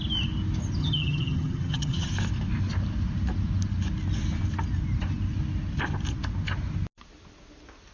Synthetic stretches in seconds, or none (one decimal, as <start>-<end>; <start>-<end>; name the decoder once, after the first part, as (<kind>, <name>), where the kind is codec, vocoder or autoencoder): 0.8-2.1 (vocoder, HiFi-GAN)